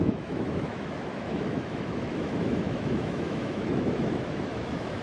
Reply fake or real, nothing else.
fake